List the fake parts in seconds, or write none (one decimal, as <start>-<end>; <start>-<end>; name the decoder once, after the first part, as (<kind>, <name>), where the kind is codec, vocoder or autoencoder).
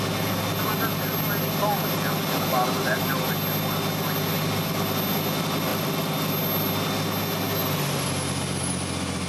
5.7-6.3 (vocoder, BigVGAN v2)